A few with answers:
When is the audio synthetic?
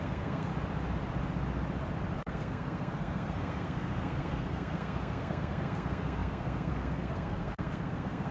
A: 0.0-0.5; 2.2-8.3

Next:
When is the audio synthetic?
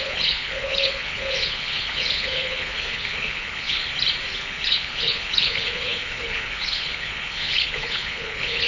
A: 0.0-3.9; 4.4-8.7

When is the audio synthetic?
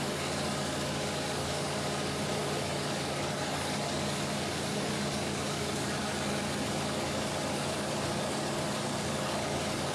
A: 0.0-9.9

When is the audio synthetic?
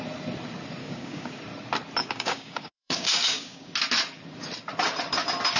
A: 0.8-1.4; 2.0-3.7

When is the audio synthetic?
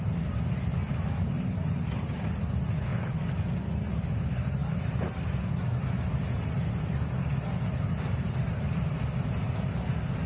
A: none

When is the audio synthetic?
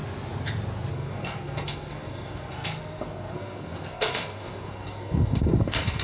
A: 0.9-6.0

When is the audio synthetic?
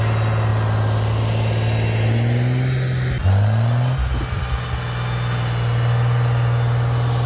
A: none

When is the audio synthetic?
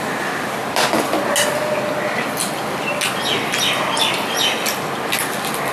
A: none